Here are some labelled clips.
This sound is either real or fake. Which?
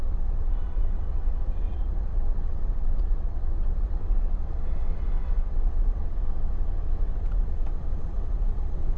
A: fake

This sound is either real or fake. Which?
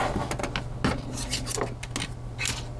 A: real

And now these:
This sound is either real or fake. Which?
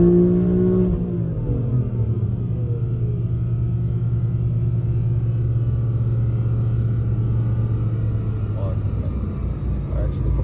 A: real